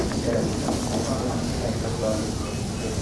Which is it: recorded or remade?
recorded